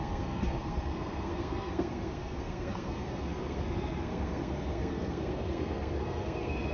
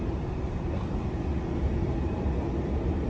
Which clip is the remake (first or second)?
first